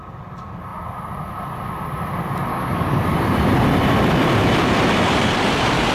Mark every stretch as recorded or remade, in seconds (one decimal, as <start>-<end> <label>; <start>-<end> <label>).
0.0-2.5 recorded; 2.5-3.0 remade; 3.0-5.9 recorded